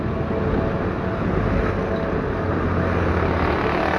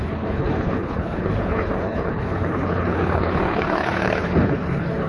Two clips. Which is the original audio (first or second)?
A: first